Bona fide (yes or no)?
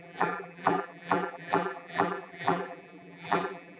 no